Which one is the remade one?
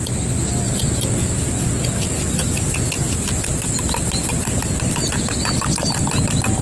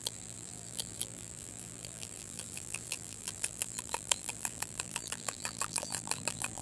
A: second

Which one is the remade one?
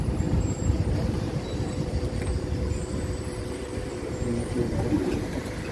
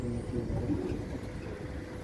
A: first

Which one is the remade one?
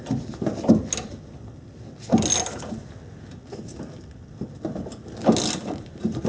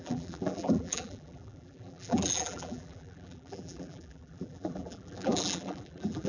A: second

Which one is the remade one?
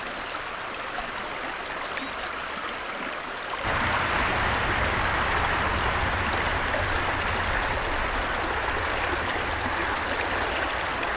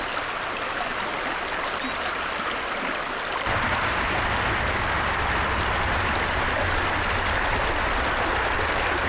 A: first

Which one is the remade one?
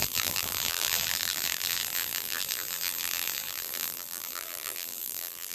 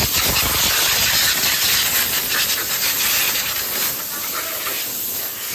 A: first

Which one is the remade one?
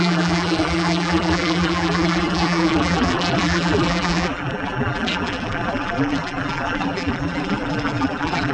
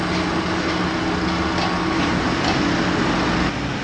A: first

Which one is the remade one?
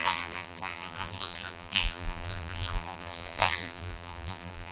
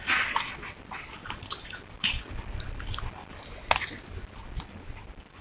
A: first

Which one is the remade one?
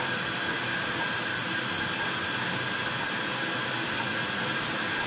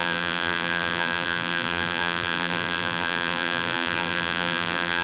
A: second